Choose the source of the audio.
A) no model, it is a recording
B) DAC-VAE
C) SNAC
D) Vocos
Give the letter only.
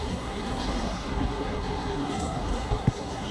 C